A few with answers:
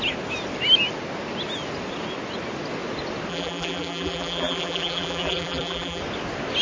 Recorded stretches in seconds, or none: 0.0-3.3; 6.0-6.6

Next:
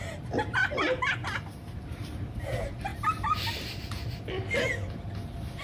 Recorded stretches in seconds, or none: 0.0-2.9; 4.2-5.6

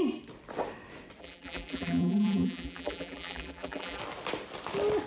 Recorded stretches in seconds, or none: 0.0-1.2; 4.0-5.1

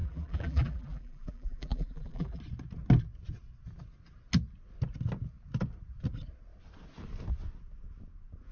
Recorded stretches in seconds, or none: 2.4-8.5

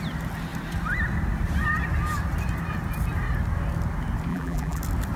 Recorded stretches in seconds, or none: 0.0-4.3; 4.8-5.2

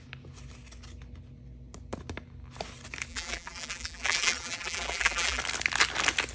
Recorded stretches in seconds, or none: 0.0-3.1; 5.4-6.3

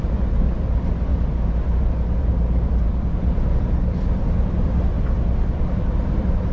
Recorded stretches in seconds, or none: 1.1-1.8; 4.9-5.6

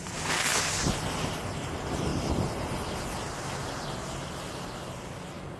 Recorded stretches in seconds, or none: 0.0-5.6